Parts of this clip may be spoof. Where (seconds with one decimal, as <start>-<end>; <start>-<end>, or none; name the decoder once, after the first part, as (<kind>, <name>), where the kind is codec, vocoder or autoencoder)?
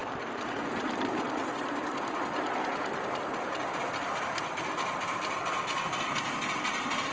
none